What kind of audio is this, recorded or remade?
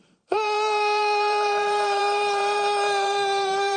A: remade